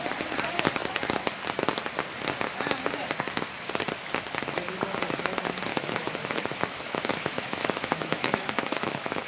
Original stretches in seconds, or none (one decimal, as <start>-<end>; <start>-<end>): 0.0-5.7